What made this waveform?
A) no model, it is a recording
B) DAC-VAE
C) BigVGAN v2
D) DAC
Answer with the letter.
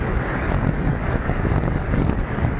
D